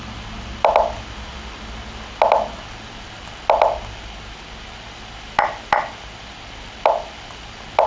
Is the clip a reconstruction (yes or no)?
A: no